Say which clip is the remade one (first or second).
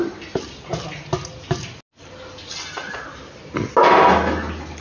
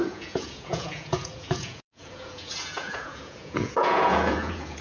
second